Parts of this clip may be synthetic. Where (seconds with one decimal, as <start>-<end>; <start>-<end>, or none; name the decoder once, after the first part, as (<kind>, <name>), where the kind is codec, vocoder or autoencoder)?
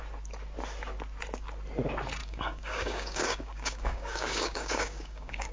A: 2.2-5.5 (codec, DAC)